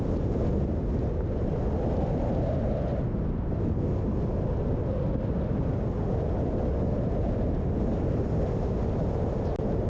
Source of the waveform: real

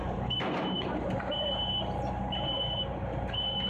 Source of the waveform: fake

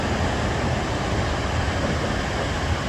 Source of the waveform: real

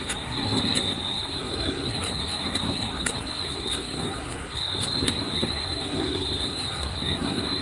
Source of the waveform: fake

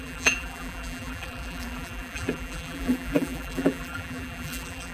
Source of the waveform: fake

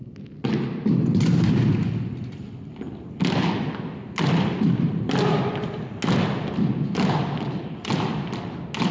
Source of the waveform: real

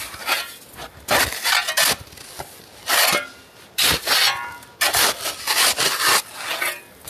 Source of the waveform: real